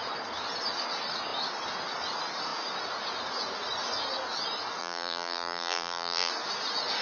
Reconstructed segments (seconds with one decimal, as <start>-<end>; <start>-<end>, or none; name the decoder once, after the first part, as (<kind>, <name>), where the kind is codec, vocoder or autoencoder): 4.8-6.3 (vocoder, BigVGAN v2)